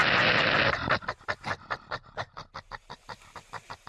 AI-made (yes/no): no